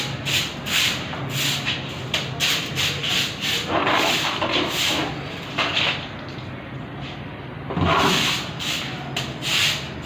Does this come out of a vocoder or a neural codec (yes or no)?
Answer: no